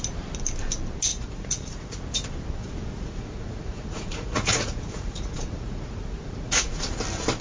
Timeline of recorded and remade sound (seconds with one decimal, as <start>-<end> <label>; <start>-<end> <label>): 0.0-1.1 recorded; 1.1-2.0 remade; 2.0-2.6 recorded; 2.6-7.0 remade; 7.0-7.4 recorded